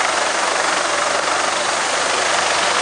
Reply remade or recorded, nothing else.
recorded